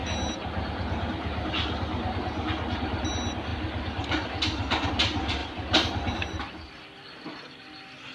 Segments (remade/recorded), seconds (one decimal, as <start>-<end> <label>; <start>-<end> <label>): 0.0-1.5 remade; 1.5-5.4 recorded; 5.4-6.8 remade; 6.8-8.1 recorded